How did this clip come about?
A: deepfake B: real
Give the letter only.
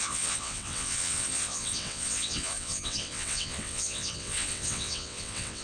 A